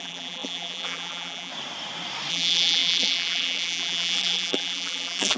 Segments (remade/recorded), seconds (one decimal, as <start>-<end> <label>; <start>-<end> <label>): 0.0-1.5 remade; 1.5-2.3 recorded; 2.3-5.4 remade